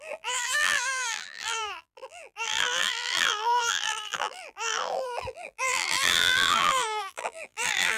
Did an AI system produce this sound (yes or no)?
yes